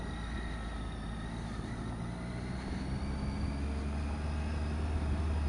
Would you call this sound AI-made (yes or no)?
no